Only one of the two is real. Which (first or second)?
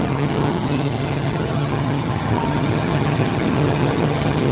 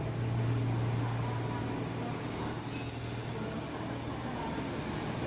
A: second